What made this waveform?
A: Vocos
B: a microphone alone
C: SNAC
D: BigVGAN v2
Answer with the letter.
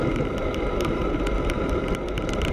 B